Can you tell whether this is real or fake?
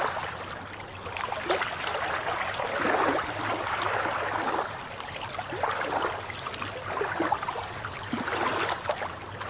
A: real